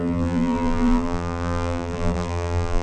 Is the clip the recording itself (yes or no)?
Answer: no